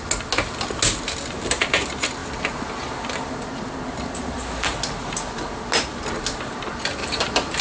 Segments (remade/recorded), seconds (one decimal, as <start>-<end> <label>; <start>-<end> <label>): 0.0-7.0 recorded; 7.0-7.6 remade